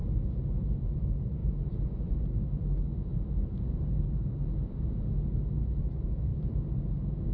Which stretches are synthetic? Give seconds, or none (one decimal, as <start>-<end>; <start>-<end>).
0.0-0.9; 6.3-6.8